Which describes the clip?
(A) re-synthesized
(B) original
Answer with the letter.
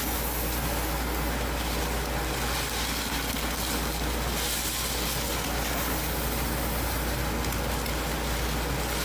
B